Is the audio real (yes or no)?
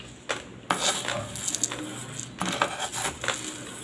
yes